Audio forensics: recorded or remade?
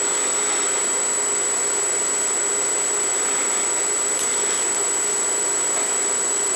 recorded